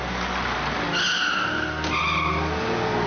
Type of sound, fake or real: real